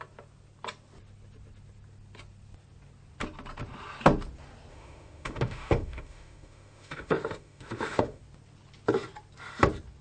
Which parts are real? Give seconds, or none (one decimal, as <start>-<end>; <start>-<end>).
0.0-4.7; 8.2-10.0